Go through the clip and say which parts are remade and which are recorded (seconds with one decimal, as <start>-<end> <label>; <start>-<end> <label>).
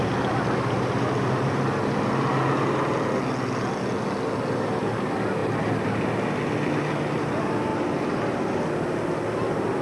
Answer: 0.0-7.7 recorded; 7.7-8.6 remade; 8.6-9.8 recorded